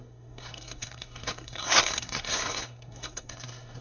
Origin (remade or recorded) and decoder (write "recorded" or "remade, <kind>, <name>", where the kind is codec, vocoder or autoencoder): remade, codec, SNAC